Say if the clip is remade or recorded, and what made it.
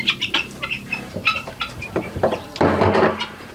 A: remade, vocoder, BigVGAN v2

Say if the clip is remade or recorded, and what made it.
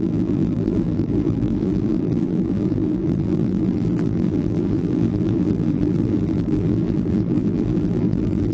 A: remade, vocoder, BigVGAN v2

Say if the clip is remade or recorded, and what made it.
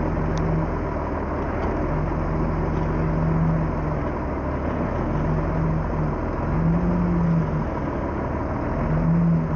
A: recorded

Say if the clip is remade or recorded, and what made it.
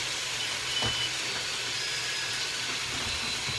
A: remade, vocoder, BigVGAN v2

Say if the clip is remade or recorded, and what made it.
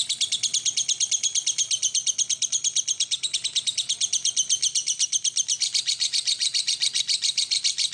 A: recorded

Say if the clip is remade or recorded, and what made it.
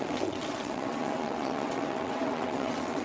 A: remade, vocoder, WaveNeXt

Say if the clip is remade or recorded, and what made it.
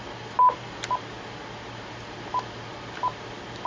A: recorded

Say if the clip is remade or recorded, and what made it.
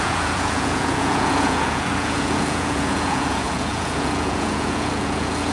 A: remade, vocoder, Vocos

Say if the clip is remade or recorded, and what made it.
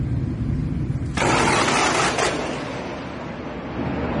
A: recorded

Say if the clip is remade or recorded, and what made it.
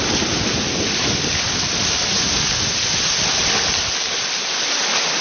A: recorded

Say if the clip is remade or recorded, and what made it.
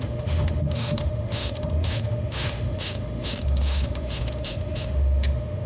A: remade, autoencoder, DAC-VAE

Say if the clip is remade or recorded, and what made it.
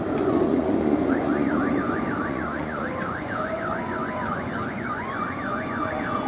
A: remade, vocoder, Vocos